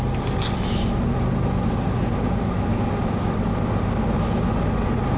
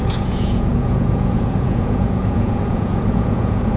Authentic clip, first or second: first